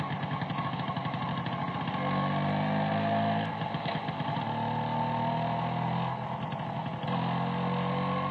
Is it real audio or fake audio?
real